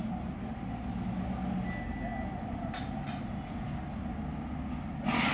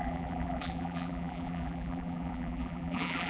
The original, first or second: first